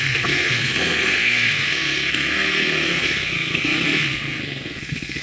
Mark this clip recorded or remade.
remade